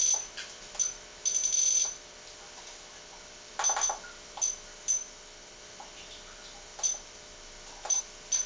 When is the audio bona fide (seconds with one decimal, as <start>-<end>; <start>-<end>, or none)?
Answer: 0.0-1.8; 3.5-6.7; 8.0-8.5